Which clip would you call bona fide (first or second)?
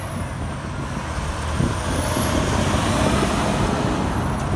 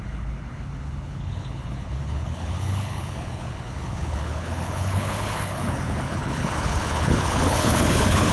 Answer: first